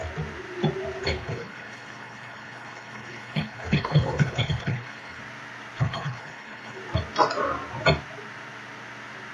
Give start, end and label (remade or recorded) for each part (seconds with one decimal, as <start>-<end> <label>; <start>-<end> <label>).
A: 0.0-1.0 recorded; 1.0-5.2 remade; 5.2-5.8 recorded; 5.8-6.8 remade; 6.8-9.3 recorded